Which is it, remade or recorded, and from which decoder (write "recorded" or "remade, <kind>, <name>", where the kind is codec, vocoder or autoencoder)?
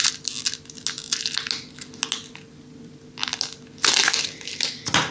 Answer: recorded